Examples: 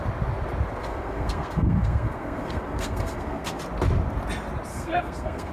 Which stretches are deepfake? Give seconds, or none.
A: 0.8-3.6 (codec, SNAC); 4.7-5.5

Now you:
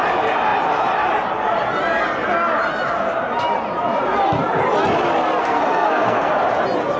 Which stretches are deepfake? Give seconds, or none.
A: 5.4-6.3 (codec, SNAC)

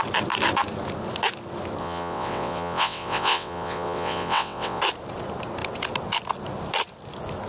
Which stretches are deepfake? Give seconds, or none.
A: 1.8-4.8 (vocoder, WaveNeXt)

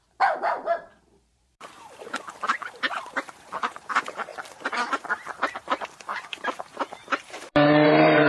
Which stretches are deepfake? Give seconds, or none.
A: 0.0-8.3 (vocoder, BigVGAN v2)

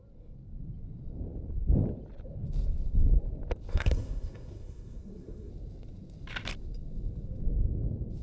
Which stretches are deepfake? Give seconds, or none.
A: 3.7-5.5 (codec, SNAC)

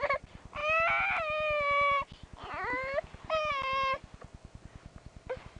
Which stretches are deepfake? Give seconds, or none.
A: none